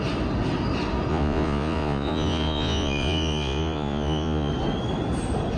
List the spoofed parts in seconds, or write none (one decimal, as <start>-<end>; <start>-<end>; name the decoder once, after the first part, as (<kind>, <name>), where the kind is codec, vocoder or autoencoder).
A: 1.1-4.5 (vocoder, Vocos)